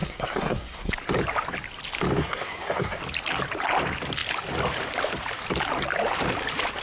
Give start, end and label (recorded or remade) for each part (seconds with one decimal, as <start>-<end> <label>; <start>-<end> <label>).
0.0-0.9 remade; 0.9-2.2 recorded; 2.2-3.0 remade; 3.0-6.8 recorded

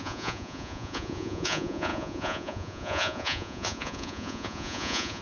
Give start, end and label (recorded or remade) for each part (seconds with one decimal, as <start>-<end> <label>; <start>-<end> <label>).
0.0-5.2 remade

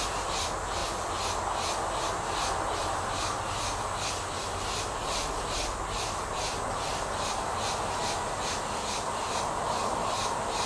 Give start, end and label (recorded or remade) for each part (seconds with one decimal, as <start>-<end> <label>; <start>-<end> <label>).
0.0-10.7 recorded

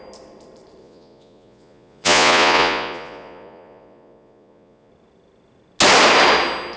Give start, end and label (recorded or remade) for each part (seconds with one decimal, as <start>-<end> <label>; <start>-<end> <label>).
0.0-0.8 recorded; 0.8-4.9 remade; 4.9-6.8 recorded